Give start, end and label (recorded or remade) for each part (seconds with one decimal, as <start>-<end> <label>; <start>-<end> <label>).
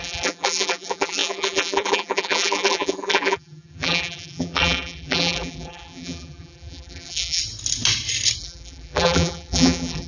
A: 0.0-7.4 remade; 7.4-8.4 recorded; 8.4-10.1 remade